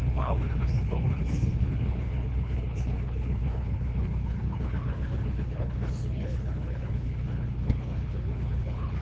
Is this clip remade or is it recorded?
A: remade